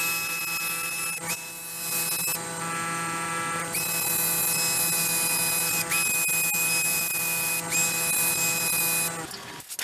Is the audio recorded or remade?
recorded